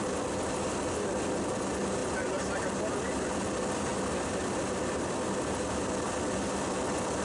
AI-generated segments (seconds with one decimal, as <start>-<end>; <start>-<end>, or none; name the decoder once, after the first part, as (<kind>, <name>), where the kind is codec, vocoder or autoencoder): none